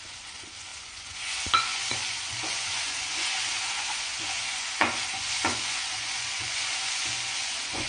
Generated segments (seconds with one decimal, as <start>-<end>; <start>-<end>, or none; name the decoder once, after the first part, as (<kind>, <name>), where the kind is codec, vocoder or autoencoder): 0.0-7.9 (vocoder, Vocos)